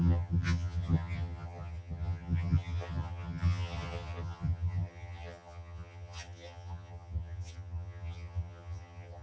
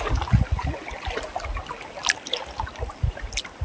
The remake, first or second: first